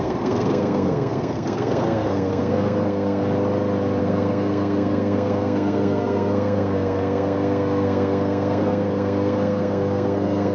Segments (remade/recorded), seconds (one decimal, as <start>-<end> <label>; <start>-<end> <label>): 0.0-3.2 remade; 3.2-4.0 recorded; 4.0-10.5 remade